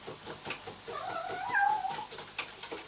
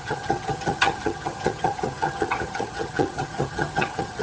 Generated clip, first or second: second